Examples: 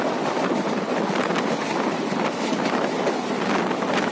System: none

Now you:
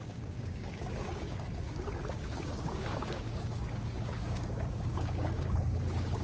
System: codec, DAC